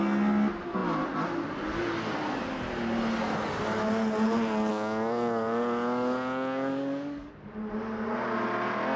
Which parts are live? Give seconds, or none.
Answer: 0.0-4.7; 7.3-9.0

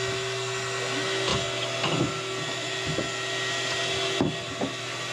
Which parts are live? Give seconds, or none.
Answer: 0.0-5.1

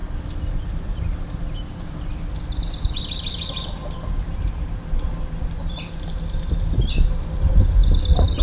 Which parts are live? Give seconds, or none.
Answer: 0.0-8.4

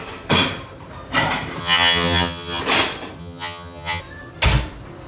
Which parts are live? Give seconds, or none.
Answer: 0.0-1.6; 2.6-3.2; 4.0-5.1

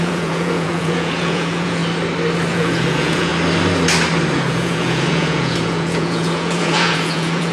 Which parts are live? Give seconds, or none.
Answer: 1.8-2.5; 3.3-4.5

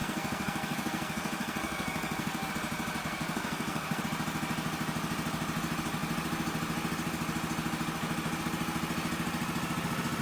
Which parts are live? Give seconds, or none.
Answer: 2.5-3.0; 4.0-10.2

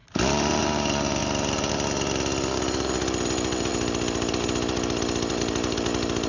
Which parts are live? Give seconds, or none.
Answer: 0.0-1.2; 1.7-6.3

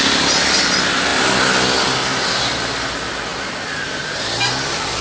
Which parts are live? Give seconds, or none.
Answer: 0.0-5.0